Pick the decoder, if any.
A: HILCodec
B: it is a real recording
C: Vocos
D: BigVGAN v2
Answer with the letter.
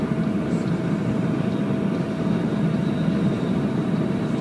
D